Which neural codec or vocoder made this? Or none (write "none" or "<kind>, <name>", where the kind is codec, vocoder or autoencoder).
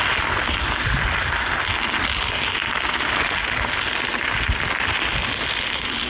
none